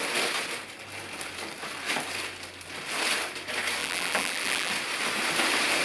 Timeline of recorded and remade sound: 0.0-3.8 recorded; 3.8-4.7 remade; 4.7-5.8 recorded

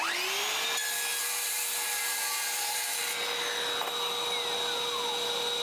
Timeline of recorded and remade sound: 0.0-1.2 recorded; 1.2-3.0 remade; 3.0-5.6 recorded

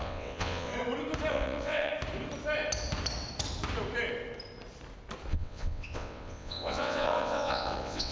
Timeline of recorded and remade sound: 0.0-0.7 remade; 0.7-1.3 recorded; 1.3-1.9 remade; 1.9-5.3 recorded; 5.3-8.1 remade

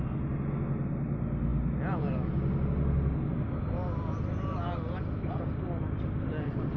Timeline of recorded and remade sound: 0.0-6.8 recorded